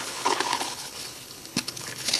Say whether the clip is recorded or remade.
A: remade